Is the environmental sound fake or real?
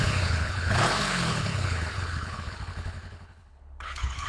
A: fake